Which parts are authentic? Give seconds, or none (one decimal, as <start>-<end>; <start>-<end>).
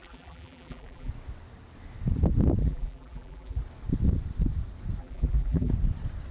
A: 1.1-2.6; 3.6-5.0; 5.7-6.3